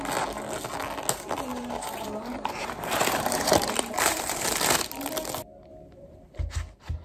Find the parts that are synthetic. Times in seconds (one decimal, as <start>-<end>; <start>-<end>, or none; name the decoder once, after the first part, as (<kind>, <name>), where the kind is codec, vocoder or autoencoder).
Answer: 1.5-4.9 (vocoder, BigVGAN v2)